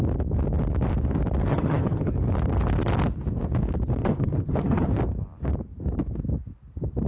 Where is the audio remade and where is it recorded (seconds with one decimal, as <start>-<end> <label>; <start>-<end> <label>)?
0.0-1.5 recorded; 1.5-2.1 remade; 2.1-4.0 recorded; 4.0-4.9 remade; 4.9-7.1 recorded